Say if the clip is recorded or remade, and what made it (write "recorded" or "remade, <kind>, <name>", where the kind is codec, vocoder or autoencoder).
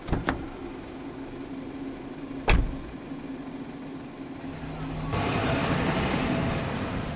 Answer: recorded